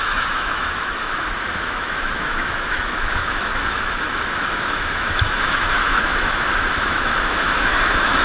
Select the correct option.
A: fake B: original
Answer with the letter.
A